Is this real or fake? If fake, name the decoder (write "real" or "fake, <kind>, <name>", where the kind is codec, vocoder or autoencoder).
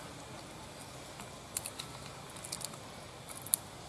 real